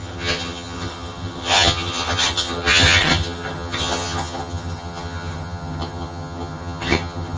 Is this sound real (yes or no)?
no